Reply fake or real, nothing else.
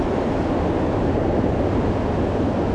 real